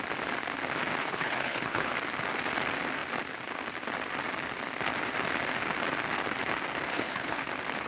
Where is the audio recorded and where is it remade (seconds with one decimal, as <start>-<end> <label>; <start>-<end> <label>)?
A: 0.0-1.0 recorded; 1.0-1.9 remade; 1.9-6.9 recorded; 6.9-7.4 remade; 7.4-7.9 recorded